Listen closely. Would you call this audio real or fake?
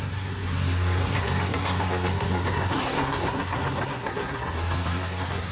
fake